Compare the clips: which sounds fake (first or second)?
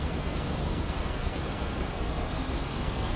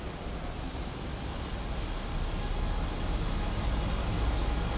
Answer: first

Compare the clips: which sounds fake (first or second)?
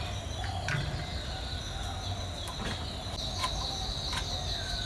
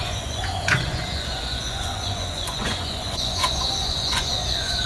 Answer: second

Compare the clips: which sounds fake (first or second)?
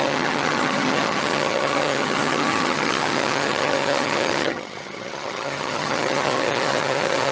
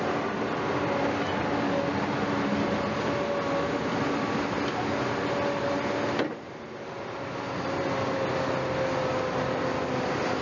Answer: first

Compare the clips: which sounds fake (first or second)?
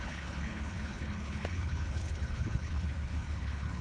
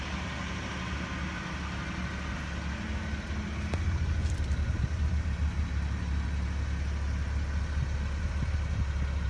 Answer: first